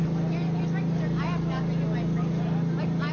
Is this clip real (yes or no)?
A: yes